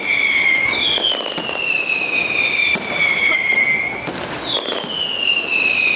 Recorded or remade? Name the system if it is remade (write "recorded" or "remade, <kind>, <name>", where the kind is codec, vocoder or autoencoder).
recorded